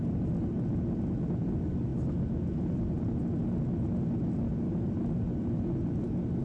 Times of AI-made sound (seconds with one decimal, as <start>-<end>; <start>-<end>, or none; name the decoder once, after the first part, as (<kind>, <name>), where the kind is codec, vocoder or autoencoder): none